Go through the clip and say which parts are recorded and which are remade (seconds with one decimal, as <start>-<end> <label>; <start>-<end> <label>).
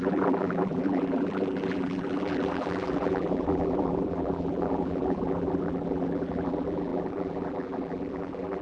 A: 0.0-8.6 remade